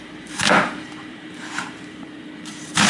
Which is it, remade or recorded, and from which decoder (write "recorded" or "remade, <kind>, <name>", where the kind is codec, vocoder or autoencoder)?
remade, vocoder, BigVGAN v2